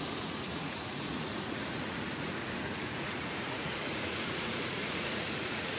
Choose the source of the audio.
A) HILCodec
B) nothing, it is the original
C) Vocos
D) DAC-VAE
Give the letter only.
C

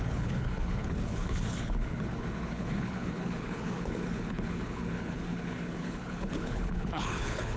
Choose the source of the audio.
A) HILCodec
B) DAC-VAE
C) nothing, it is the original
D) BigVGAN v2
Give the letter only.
A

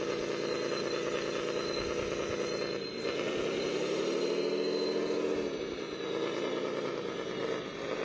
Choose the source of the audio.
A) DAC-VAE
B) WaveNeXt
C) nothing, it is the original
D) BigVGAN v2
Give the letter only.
C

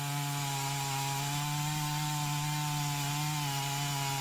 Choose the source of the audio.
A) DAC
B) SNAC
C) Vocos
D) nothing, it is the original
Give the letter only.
D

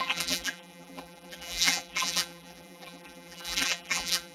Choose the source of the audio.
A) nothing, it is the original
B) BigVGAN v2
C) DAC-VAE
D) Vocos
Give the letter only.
B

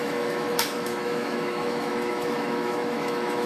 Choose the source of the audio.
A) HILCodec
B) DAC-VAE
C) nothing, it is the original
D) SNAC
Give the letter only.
B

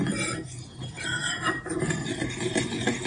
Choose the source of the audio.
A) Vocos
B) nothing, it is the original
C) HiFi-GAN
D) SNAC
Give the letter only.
B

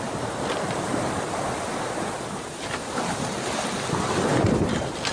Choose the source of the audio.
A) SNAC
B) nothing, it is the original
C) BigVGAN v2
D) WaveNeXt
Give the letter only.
B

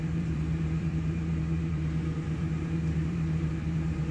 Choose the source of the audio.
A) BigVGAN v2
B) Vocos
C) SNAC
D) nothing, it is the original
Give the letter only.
A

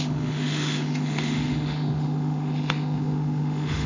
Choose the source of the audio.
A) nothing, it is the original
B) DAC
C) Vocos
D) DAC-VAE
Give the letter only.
D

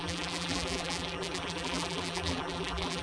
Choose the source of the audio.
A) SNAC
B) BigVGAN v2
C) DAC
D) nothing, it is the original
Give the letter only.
B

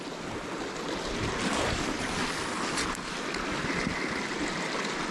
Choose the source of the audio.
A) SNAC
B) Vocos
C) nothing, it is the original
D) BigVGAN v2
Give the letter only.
C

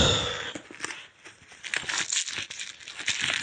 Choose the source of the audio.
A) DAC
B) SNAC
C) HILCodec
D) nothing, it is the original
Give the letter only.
D